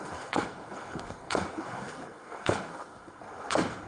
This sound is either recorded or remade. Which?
remade